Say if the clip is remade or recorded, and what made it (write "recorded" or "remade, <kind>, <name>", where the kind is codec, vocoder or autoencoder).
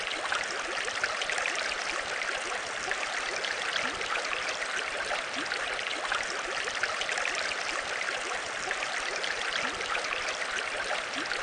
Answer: remade, vocoder, BigVGAN v2